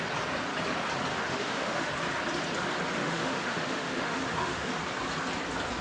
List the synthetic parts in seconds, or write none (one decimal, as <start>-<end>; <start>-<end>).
1.1-1.9; 3.0-4.7